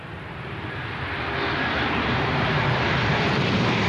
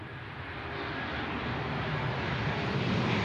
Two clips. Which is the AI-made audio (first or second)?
first